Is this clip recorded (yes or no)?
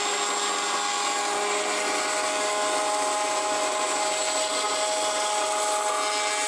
yes